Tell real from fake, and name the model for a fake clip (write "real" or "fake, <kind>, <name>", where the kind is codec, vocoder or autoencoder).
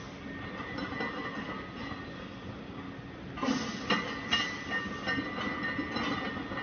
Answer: real